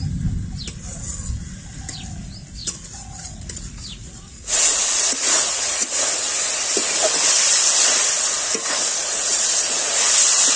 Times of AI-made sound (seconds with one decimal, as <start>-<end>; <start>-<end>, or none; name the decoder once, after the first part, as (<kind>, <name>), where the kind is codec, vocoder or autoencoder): 2.6-6.0 (vocoder, Vocos); 9.0-10.1

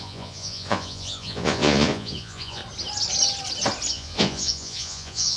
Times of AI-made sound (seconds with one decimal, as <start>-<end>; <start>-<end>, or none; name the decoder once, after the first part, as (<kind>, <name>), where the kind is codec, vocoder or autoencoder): 0.0-2.6 (vocoder, Vocos); 3.9-5.4

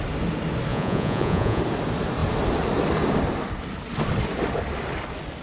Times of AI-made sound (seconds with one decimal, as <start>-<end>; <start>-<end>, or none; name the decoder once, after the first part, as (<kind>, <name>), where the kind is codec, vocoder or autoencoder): 0.7-1.6 (vocoder, Vocos)

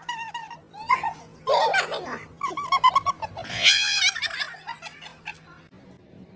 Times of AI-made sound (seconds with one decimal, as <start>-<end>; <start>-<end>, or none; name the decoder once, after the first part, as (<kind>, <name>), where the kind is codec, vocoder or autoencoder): 3.5-4.0 (vocoder, Vocos)